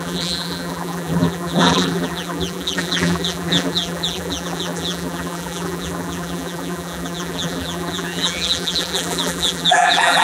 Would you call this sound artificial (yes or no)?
yes